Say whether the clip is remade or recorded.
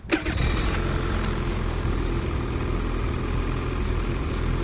recorded